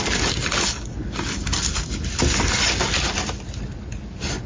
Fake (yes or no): no